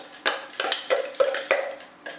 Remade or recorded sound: recorded